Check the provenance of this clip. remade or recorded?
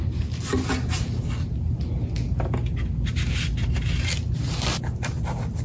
recorded